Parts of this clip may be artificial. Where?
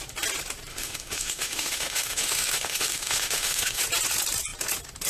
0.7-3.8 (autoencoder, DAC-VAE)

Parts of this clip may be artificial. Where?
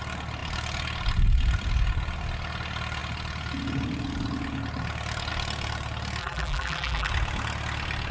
6.2-7.1 (vocoder, BigVGAN v2)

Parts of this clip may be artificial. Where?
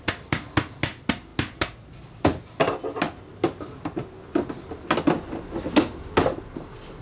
none